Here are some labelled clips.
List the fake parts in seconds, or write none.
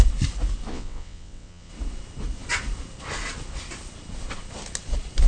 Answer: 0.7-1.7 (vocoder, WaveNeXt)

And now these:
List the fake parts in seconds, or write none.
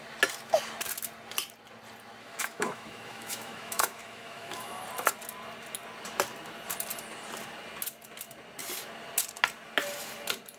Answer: 2.2-4.8 (autoencoder, DAC-VAE)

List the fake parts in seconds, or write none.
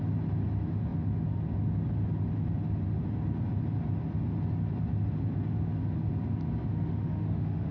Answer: 6.7-7.7 (autoencoder, DAC-VAE)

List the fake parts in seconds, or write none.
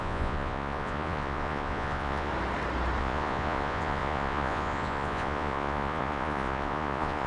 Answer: 0.0-2.3 (vocoder, Vocos); 3.0-7.3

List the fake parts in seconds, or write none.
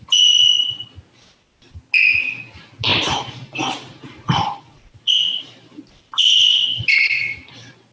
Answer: 2.9-7.5 (vocoder, BigVGAN v2)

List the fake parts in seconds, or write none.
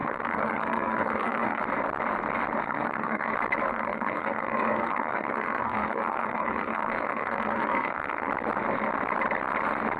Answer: 0.0-1.6 (codec, SNAC); 2.6-3.3; 3.7-8.3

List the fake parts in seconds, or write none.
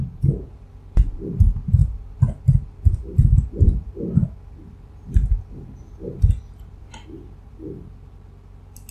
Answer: 0.0-0.5 (vocoder, Vocos)